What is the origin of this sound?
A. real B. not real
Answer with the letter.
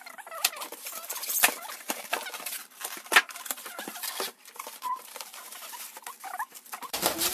B